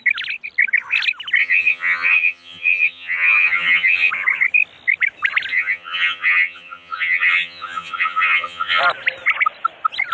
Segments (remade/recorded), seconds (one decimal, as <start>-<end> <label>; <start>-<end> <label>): 0.0-1.4 recorded; 1.4-4.1 remade; 4.1-5.5 recorded; 5.5-8.8 remade; 8.8-10.1 recorded